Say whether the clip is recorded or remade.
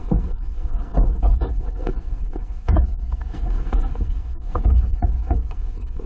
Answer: remade